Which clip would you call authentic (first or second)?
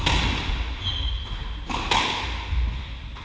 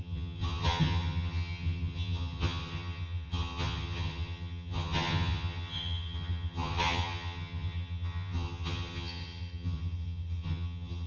first